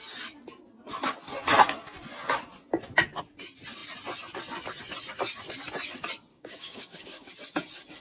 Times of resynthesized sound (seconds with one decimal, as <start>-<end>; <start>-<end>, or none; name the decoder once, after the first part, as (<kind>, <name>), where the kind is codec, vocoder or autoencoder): 6.3-7.3 (codec, DAC)